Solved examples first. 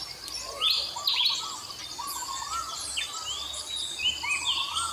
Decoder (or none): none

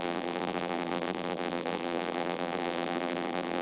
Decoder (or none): vocoder, BigVGAN v2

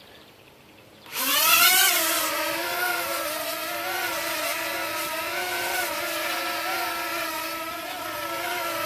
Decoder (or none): vocoder, BigVGAN v2